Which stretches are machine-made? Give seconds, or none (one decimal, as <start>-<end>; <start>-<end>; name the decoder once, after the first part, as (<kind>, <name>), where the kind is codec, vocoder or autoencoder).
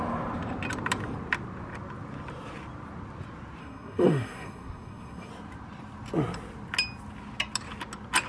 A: 3.6-5.3 (codec, SNAC)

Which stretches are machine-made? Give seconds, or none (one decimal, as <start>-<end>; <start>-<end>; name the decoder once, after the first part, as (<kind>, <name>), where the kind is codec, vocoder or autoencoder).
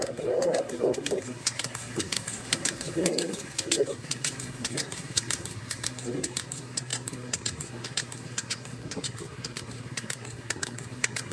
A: 0.0-11.3 (codec, SNAC)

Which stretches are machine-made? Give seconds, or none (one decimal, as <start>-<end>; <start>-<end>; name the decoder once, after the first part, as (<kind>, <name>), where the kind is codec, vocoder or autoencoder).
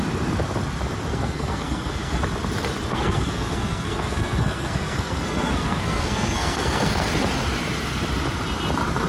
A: 1.1-2.2 (codec, SNAC); 2.9-7.1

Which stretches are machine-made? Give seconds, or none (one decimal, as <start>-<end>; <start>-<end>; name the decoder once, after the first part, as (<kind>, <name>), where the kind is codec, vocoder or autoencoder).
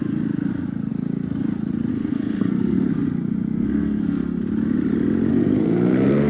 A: 1.9-4.4 (codec, SNAC); 5.3-6.3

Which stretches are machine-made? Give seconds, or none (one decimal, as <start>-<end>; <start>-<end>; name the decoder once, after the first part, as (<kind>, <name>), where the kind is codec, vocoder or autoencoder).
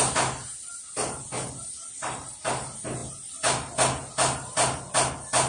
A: none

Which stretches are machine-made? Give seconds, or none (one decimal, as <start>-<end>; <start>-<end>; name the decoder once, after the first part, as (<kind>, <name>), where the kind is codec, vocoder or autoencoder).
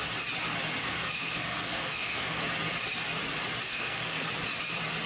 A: 0.8-2.4 (codec, SNAC); 3.7-4.3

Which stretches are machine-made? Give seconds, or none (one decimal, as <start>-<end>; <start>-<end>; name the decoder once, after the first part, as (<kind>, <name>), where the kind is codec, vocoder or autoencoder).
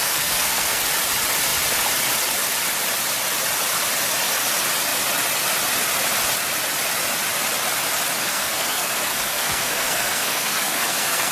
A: 0.0-0.8 (codec, SNAC); 8.2-11.3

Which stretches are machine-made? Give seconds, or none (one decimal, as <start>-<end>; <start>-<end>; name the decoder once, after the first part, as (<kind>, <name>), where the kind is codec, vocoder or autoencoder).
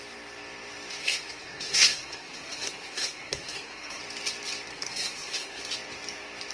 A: 1.0-4.0 (codec, SNAC); 4.7-5.6